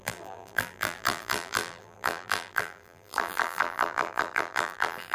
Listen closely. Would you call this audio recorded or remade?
remade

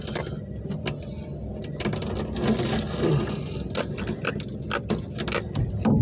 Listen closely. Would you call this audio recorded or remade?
recorded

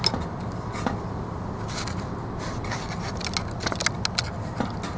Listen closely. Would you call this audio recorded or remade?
recorded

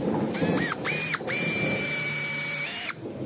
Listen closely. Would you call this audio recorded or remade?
remade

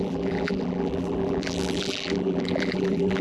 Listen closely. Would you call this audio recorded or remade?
remade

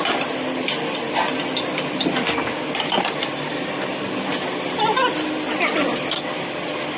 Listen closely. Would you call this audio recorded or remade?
recorded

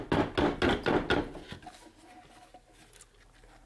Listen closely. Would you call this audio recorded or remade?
recorded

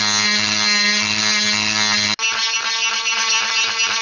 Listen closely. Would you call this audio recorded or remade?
recorded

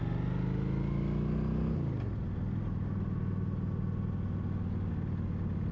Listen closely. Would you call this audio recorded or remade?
recorded